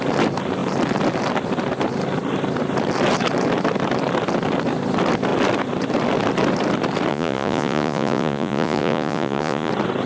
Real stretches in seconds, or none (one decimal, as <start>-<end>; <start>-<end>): 0.0-7.1; 9.7-10.1